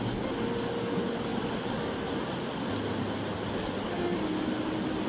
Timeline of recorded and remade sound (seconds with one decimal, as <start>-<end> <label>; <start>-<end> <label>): 0.0-5.1 recorded